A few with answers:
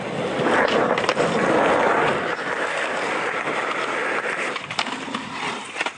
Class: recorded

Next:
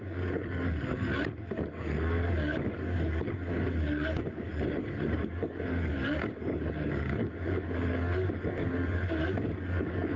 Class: remade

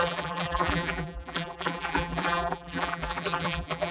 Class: remade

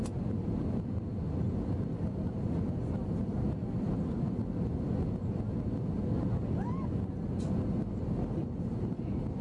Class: recorded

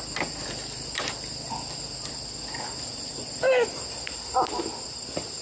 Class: recorded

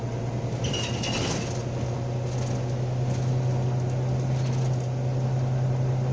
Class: recorded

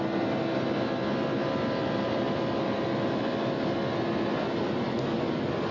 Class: recorded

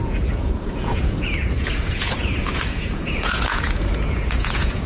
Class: remade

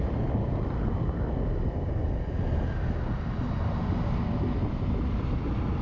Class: recorded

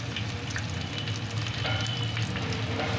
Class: recorded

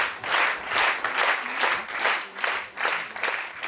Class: recorded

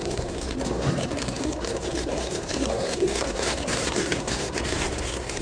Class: remade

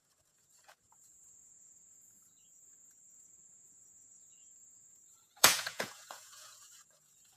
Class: remade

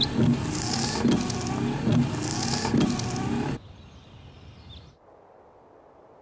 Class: recorded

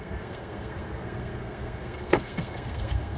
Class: remade